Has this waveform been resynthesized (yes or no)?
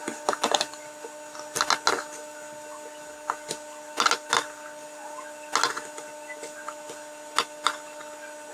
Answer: no